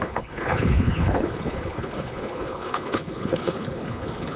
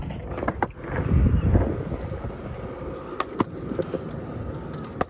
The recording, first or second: second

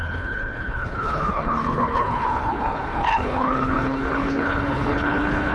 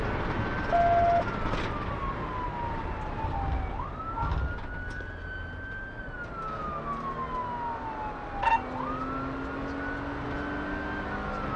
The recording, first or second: second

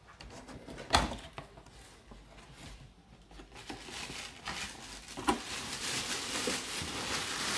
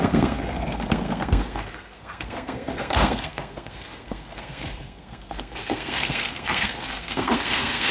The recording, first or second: first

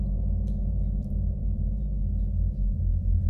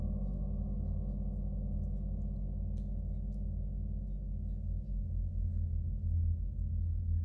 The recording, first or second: second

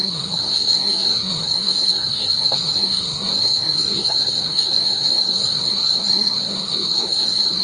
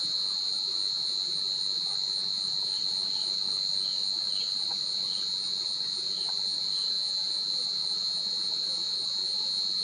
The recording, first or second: second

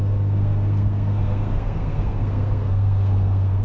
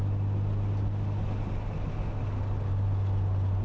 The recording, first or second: second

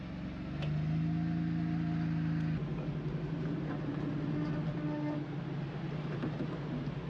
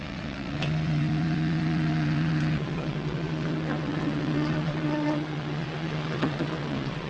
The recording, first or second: first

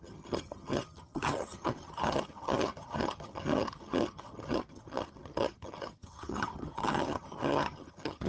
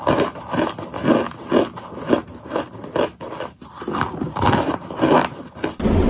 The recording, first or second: second